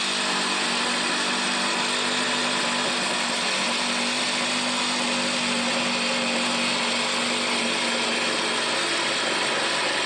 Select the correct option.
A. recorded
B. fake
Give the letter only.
A